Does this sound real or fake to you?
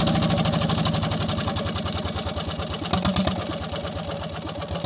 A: real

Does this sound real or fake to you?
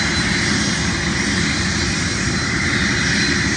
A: real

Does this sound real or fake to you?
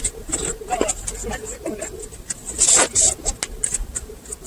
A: real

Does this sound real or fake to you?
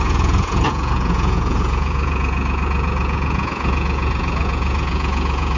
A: fake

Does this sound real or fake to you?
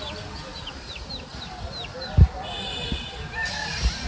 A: real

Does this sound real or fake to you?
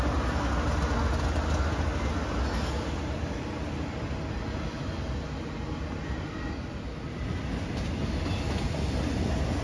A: real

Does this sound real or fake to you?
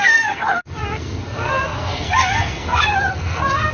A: fake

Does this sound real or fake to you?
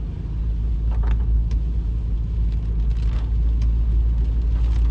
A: real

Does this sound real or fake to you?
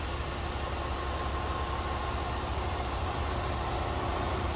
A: real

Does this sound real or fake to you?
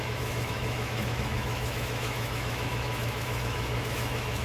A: fake